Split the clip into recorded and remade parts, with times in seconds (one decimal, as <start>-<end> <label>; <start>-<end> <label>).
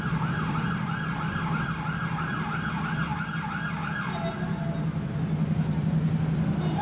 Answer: 0.0-6.8 recorded